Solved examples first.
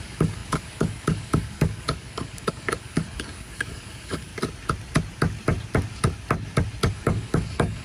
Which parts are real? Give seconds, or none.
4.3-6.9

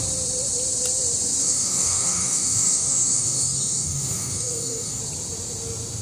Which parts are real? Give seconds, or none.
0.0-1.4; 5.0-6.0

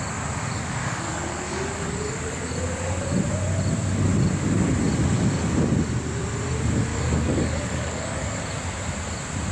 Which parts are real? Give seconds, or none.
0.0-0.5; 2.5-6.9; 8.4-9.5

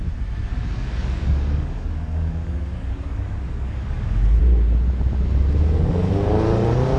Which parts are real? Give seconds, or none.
0.0-0.5; 4.4-7.0

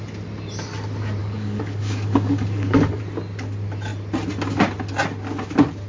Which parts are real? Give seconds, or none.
0.0-1.2; 3.0-5.9

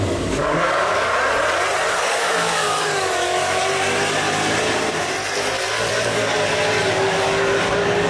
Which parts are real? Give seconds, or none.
1.1-1.9; 3.6-5.9

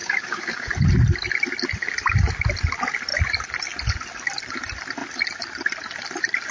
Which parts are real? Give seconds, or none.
0.7-6.5